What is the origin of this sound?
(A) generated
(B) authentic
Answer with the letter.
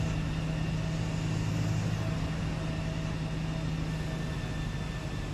B